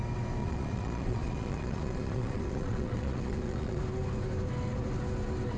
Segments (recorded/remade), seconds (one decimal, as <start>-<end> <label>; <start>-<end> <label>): 0.0-0.4 recorded; 0.4-3.8 remade; 3.8-5.6 recorded